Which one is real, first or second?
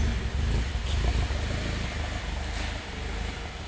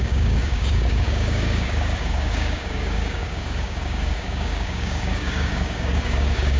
first